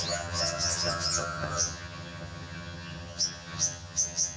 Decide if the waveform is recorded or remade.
remade